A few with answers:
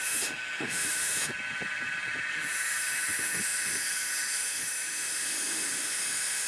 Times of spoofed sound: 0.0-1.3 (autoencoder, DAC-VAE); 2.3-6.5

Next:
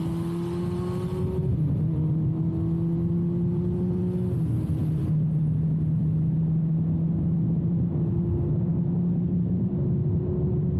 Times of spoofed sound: none

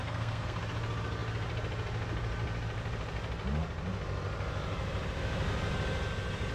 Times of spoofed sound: 0.0-0.6 (codec, SNAC)

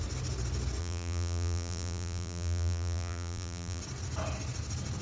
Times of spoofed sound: 0.8-3.8 (vocoder, BigVGAN v2)

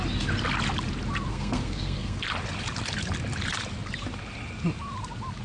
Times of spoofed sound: 1.3-2.2 (codec, SNAC)

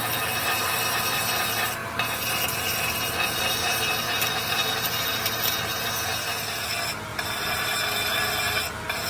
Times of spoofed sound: 7.1-7.7 (vocoder, BigVGAN v2)

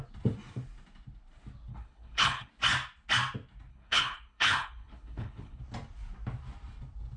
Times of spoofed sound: 1.7-2.5 (codec, HILCodec); 3.7-5.6

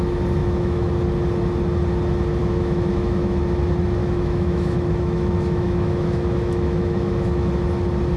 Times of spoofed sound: 0.4-0.9 (autoencoder, DAC-VAE); 2.4-3.4; 4.0-7.5